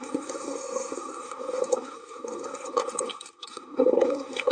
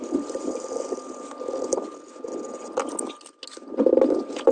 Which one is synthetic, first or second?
first